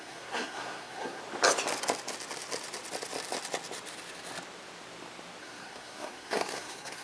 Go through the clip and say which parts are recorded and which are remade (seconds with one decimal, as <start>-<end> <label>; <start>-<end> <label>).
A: 0.0-1.2 remade; 1.2-5.4 recorded; 5.4-7.0 remade